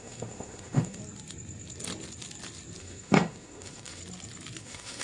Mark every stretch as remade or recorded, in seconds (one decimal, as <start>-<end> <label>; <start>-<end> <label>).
0.0-1.0 remade; 1.0-2.8 recorded; 2.8-4.0 remade; 4.0-4.6 recorded; 4.6-5.0 remade